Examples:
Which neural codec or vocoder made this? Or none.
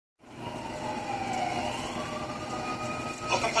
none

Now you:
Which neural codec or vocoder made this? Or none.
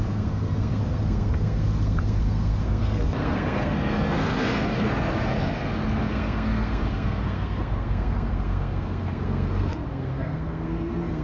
codec, SNAC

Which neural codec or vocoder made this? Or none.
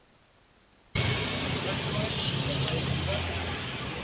none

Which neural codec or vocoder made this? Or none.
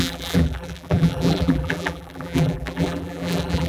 vocoder, BigVGAN v2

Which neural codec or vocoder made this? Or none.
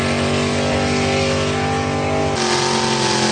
none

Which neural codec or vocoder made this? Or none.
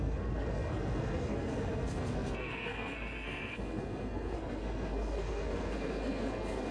codec, SNAC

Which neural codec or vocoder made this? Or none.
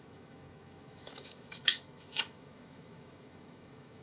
autoencoder, DAC-VAE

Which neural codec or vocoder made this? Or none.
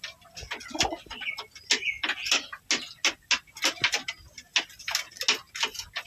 none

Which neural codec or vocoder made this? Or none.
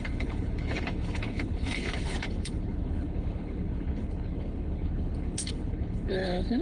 codec, HILCodec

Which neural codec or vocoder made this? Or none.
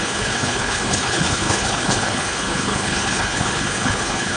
codec, HILCodec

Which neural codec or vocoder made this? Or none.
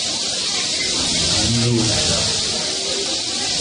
none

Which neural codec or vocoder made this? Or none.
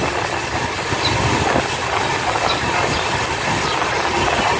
none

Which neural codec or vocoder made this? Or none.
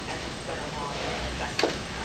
autoencoder, DAC-VAE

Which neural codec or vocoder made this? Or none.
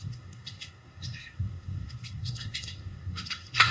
codec, SNAC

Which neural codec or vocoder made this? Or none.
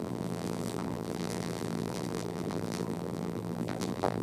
vocoder, BigVGAN v2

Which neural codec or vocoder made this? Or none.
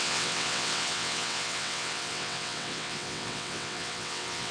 vocoder, WaveNeXt